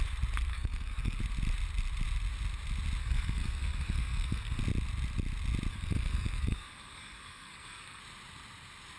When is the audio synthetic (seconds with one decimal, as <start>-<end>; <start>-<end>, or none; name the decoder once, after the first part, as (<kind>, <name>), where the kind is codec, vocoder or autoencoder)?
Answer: 0.5-1.2 (codec, SNAC); 3.0-4.6; 5.7-8.0

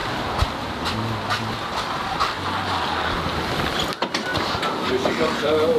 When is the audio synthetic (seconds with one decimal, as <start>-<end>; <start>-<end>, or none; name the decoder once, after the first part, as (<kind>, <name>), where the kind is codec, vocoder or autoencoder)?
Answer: 3.5-4.3 (vocoder, BigVGAN v2); 4.9-5.8

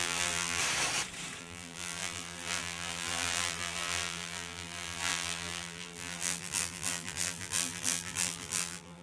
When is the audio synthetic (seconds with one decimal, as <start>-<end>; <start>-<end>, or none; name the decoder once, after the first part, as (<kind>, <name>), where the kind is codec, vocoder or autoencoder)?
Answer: 0.0-0.6 (vocoder, BigVGAN v2); 1.4-9.0

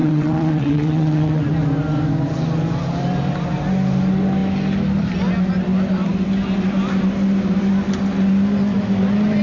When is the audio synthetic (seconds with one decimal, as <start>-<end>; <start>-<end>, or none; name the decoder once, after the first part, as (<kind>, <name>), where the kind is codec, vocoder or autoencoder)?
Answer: 0.0-1.4 (vocoder, WaveNeXt)

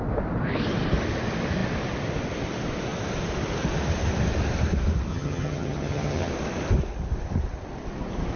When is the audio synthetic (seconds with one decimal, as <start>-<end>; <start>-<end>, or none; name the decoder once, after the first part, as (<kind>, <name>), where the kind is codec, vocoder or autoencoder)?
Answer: 5.1-6.3 (vocoder, HiFi-GAN)

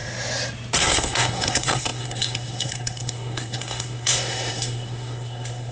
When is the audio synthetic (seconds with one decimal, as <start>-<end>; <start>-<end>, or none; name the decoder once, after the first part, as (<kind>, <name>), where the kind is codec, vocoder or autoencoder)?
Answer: 0.8-5.7 (codec, SNAC)

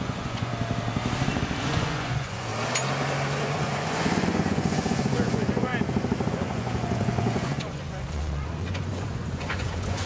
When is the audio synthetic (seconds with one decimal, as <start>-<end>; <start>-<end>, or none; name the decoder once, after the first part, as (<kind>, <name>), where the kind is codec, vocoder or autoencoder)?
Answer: 0.0-0.5 (vocoder, Vocos); 1.6-2.5; 3.4-5.7; 6.3-10.1

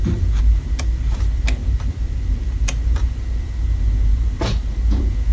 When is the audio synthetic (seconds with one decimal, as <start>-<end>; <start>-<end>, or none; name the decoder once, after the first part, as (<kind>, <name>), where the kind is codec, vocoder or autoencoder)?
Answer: 1.6-3.2 (vocoder, BigVGAN v2); 4.1-4.7